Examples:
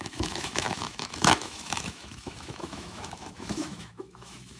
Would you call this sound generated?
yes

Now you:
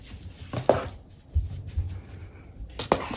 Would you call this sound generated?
no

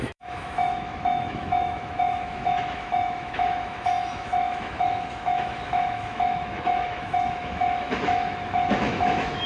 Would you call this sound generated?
yes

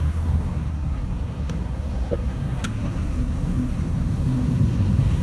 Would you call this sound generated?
yes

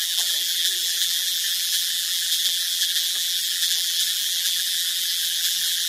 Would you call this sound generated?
yes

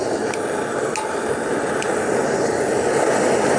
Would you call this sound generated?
no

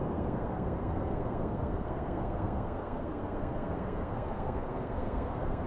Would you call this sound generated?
yes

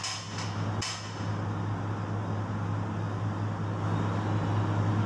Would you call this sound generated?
no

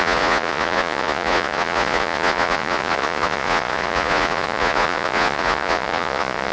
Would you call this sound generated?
yes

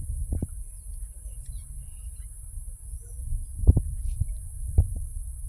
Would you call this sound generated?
no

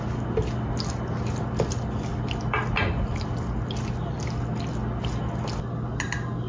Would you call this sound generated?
no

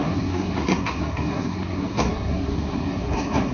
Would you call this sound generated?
yes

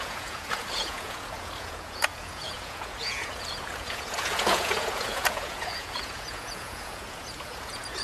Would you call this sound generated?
yes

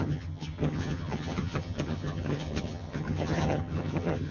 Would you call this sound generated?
yes